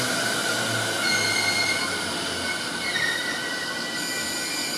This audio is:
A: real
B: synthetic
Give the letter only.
A